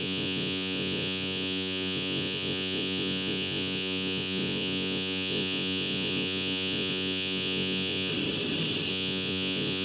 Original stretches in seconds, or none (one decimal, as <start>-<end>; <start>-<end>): 8.1-8.9